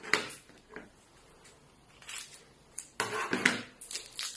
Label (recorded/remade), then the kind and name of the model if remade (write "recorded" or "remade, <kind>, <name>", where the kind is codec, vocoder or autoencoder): recorded